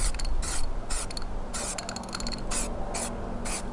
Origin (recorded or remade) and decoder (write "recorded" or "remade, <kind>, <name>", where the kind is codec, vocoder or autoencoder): recorded